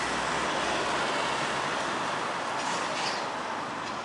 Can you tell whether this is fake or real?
real